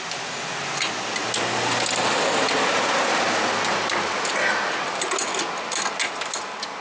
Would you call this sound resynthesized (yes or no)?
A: no